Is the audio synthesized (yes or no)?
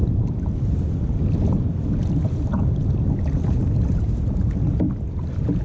no